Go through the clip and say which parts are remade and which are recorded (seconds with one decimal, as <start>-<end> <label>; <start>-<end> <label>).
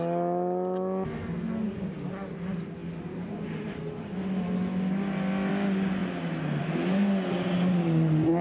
0.0-8.4 recorded